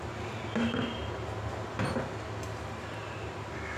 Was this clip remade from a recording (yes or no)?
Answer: no